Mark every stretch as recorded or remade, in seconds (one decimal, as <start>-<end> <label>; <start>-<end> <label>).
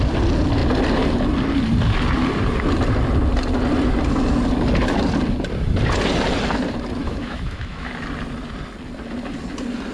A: 0.0-7.0 recorded; 7.0-7.9 remade; 7.9-9.9 recorded